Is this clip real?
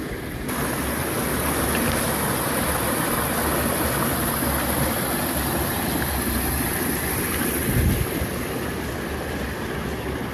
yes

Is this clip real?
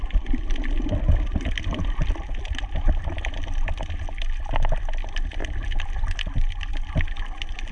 yes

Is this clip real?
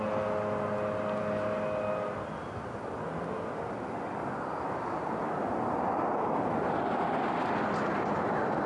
yes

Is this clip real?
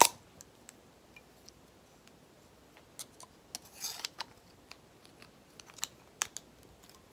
yes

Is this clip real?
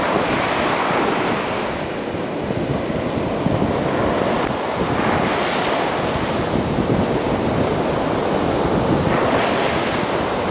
yes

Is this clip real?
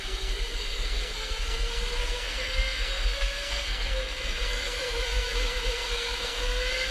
no